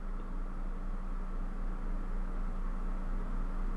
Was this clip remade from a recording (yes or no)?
no